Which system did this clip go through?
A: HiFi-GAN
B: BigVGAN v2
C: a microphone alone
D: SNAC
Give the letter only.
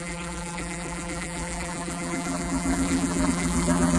B